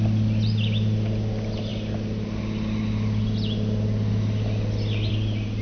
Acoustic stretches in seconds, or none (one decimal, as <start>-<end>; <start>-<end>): 0.0-5.6